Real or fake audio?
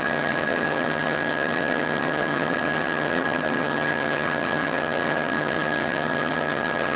fake